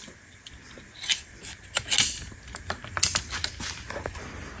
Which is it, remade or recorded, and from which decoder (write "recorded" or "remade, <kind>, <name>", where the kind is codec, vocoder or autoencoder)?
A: recorded